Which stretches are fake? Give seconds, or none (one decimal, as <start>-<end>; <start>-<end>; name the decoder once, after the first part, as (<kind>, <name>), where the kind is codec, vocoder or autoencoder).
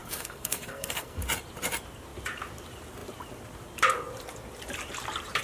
0.0-1.2 (codec, SNAC)